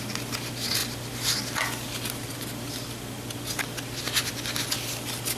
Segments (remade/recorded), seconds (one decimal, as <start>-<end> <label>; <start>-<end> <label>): 0.0-5.4 recorded